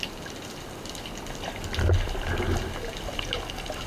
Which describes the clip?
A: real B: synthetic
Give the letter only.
A